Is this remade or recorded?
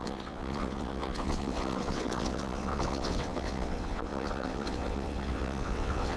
remade